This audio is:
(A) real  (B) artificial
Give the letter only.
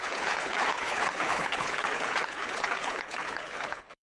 B